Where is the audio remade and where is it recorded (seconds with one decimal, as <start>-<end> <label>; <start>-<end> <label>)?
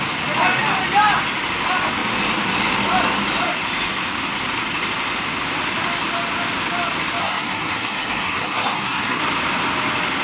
0.0-7.2 recorded; 7.2-9.2 remade; 9.2-10.2 recorded